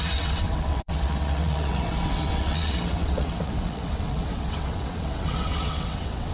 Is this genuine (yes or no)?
no